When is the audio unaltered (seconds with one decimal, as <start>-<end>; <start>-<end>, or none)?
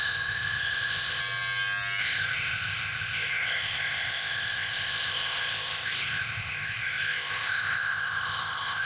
1.2-2.0